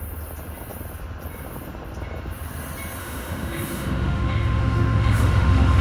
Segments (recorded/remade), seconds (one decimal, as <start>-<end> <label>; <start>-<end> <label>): 0.0-3.0 recorded; 3.0-5.8 remade